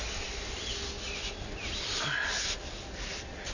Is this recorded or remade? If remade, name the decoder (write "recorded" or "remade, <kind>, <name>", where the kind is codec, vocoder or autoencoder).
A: recorded